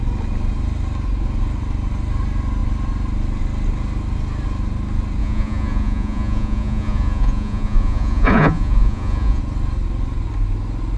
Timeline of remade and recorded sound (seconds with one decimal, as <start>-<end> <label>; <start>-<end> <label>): 0.0-5.2 recorded; 5.2-9.4 remade; 9.4-11.0 recorded